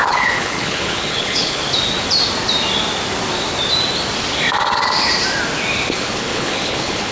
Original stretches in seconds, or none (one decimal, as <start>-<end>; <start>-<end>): 1.6-5.9